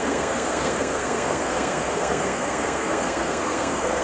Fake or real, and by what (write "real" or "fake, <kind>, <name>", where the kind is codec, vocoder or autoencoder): fake, codec, SNAC